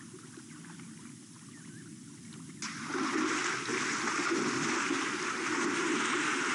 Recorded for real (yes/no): yes